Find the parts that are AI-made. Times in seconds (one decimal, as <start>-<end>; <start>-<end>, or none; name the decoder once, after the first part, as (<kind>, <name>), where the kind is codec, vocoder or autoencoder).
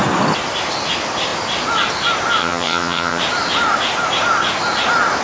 2.4-3.2 (vocoder, HiFi-GAN)